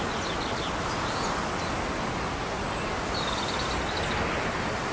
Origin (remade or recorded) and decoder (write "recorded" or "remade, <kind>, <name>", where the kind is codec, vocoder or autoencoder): recorded